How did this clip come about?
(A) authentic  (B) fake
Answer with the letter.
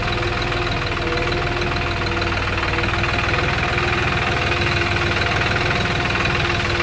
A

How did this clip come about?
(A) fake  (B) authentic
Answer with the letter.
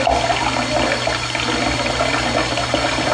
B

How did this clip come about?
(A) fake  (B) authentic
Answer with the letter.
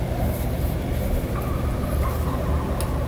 B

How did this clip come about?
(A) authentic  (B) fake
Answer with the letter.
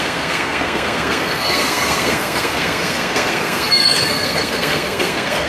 B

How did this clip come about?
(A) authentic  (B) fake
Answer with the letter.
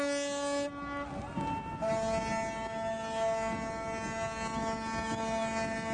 A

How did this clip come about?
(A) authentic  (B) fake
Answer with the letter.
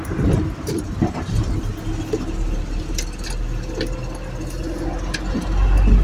A